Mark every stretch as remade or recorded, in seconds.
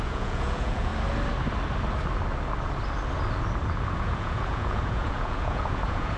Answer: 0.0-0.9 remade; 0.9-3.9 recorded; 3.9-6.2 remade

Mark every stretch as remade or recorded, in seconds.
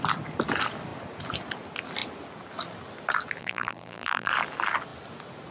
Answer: 0.0-3.4 recorded; 3.4-4.3 remade; 4.3-5.5 recorded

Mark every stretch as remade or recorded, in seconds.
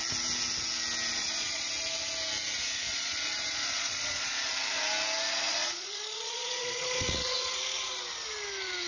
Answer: 0.0-1.1 recorded; 1.1-1.7 remade; 1.7-2.9 recorded; 2.9-4.5 remade; 4.5-5.5 recorded; 5.5-7.6 remade; 7.6-8.9 recorded